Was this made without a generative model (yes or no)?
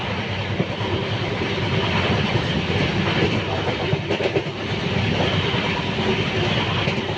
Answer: yes